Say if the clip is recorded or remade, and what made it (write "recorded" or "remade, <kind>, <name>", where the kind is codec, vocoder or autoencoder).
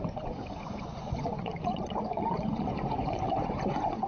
remade, vocoder, Vocos